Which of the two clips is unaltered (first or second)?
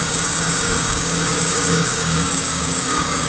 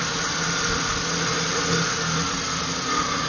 second